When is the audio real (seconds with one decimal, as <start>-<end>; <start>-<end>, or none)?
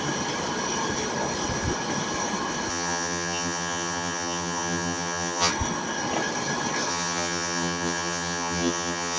0.0-2.7; 5.5-6.9